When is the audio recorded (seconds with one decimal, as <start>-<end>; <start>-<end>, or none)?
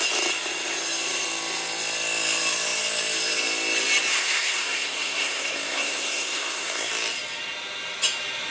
0.0-4.1; 6.9-8.5